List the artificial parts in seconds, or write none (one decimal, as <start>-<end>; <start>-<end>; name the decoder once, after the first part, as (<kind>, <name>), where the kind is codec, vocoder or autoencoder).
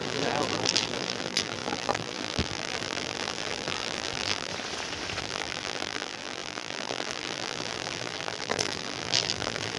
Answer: 0.0-4.5 (vocoder, BigVGAN v2); 5.2-9.8